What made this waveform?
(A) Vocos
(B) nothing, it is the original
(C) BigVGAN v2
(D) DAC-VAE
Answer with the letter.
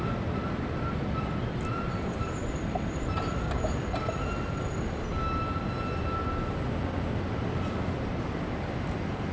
B